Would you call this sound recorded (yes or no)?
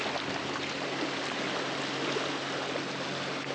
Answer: yes